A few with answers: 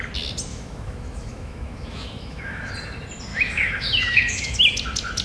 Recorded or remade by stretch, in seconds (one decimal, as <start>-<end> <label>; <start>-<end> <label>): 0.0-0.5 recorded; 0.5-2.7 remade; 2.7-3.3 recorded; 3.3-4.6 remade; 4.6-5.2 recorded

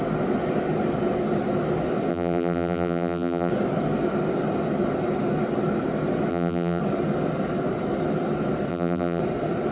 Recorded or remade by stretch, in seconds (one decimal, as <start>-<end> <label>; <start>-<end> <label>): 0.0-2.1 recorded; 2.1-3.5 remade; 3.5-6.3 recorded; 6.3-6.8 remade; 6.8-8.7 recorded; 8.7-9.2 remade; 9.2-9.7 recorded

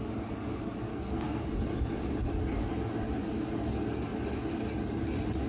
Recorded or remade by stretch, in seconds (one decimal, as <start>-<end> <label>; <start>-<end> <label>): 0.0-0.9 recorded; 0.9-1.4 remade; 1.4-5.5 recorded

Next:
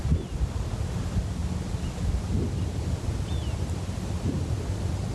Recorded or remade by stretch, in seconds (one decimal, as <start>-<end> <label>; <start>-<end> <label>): 0.0-5.1 recorded

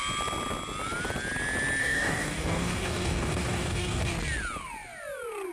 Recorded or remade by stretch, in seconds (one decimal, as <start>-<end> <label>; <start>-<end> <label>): 0.0-1.8 recorded; 1.8-4.1 remade; 4.1-5.5 recorded